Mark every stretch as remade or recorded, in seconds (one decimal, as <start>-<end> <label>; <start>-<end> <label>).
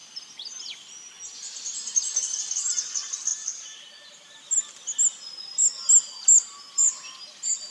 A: 0.0-7.7 recorded